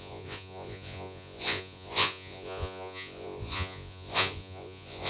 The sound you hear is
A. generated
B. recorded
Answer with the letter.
A